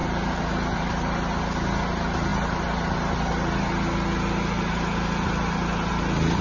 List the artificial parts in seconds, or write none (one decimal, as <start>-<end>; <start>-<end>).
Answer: none